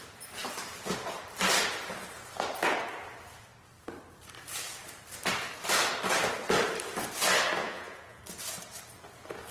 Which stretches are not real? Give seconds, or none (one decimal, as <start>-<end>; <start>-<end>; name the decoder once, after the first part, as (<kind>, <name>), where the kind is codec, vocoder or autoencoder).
7.6-8.2 (vocoder, Vocos)